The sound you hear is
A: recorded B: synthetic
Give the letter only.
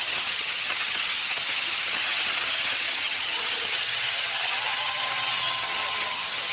B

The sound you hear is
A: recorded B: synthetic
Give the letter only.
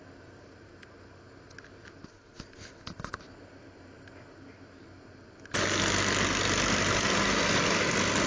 A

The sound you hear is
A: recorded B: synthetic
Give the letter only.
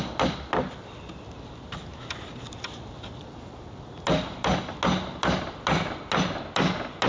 A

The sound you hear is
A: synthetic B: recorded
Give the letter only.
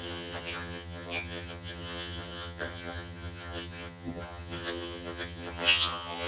A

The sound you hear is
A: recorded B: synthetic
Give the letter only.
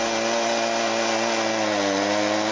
A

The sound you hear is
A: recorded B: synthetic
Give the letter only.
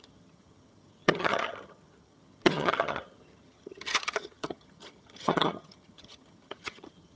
B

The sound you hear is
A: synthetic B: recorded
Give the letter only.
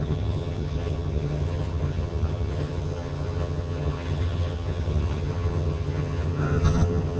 A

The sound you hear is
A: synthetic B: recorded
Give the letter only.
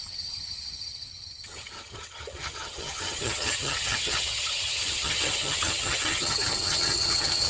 A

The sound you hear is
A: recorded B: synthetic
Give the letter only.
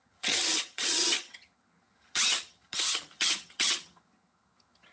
B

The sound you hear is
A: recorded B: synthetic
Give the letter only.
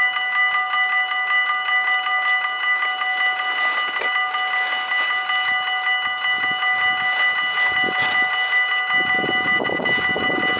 A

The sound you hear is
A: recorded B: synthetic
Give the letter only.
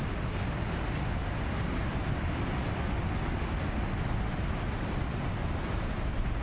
A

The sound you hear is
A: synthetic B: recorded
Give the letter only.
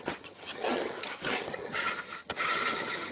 A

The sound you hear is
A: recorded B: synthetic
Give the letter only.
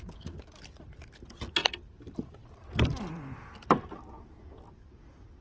A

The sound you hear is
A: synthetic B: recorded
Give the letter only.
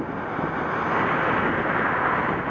B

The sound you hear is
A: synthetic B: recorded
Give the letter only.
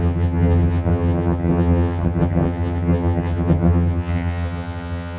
A